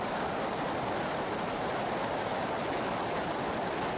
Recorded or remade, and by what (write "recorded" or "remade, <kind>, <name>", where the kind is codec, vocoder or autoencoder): recorded